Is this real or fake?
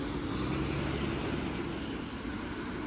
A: real